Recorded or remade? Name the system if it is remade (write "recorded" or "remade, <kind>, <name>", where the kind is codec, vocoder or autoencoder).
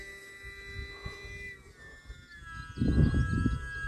recorded